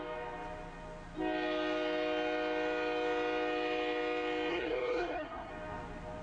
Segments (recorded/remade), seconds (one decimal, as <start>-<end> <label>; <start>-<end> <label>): 0.0-4.5 recorded; 4.5-5.5 remade; 5.5-6.2 recorded